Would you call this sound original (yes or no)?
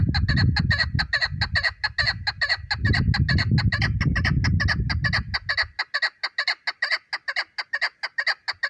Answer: yes